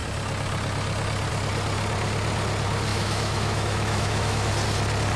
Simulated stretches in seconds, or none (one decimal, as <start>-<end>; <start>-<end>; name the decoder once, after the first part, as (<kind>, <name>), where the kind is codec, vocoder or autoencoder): 2.9-4.5 (autoencoder, DAC-VAE)